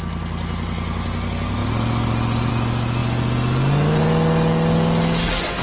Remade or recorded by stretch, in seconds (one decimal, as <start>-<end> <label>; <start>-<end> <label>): 0.0-5.6 recorded